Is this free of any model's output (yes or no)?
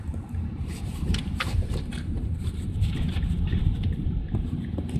no